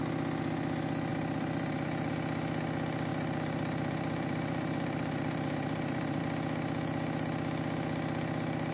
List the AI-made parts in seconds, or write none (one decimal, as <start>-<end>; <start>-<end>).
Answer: 1.1-2.1; 3.1-6.2